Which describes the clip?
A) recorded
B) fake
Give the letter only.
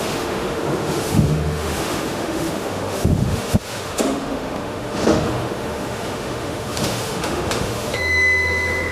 B